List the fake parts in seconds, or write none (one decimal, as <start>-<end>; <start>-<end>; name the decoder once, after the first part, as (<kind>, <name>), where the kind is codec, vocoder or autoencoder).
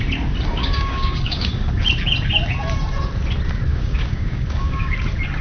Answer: 0.5-1.5 (codec, DAC); 3.7-4.9